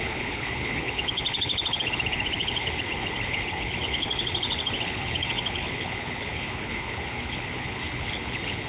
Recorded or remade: remade